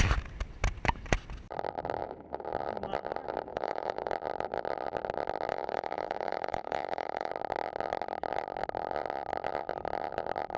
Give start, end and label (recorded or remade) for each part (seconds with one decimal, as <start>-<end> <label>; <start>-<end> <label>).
0.0-3.5 recorded; 3.5-4.1 remade; 4.1-5.5 recorded; 5.5-7.3 remade; 7.3-10.6 recorded